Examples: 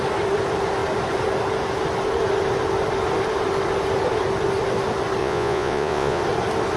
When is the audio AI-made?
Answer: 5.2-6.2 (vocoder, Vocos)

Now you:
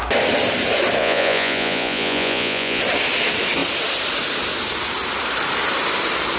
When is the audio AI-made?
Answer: 1.0-2.8 (vocoder, Vocos)

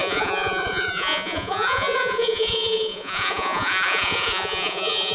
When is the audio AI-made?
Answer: 0.0-5.1 (vocoder, Vocos)